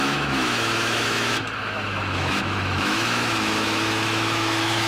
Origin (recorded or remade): remade